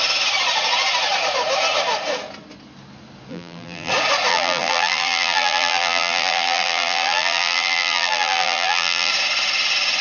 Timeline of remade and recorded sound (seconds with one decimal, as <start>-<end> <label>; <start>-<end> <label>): 0.0-3.3 recorded; 3.3-3.9 remade; 3.9-4.3 recorded; 4.3-9.1 remade; 9.1-10.0 recorded